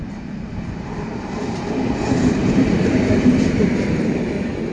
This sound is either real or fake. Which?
fake